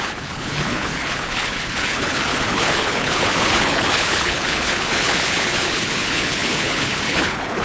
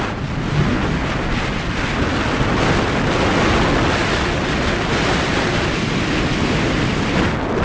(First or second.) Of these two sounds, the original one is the second